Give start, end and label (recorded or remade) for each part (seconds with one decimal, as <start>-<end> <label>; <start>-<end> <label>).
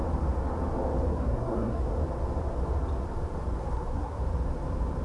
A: 0.0-1.1 recorded; 1.1-1.9 remade; 1.9-3.6 recorded; 3.6-4.2 remade; 4.2-5.0 recorded